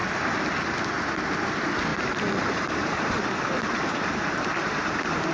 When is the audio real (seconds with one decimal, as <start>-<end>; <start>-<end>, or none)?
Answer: 0.0-1.9

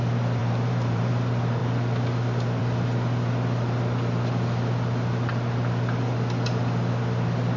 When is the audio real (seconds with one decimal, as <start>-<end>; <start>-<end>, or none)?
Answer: 0.0-0.4; 1.1-7.6